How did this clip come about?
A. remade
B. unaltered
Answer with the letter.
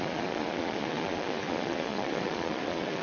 A